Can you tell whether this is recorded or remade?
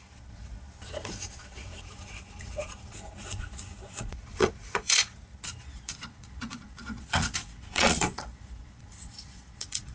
remade